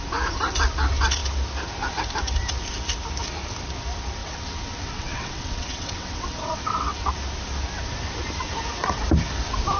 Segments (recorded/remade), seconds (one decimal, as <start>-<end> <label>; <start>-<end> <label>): 0.0-4.2 recorded; 4.2-7.1 remade; 7.1-9.8 recorded